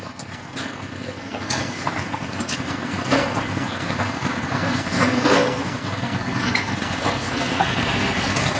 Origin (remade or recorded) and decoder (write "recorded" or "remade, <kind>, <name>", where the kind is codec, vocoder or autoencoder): remade, codec, SNAC